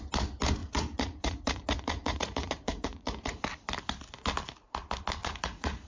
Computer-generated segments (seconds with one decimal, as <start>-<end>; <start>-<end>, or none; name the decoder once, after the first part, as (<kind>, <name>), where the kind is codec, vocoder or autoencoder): 0.6-3.4 (vocoder, Vocos); 5.2-5.9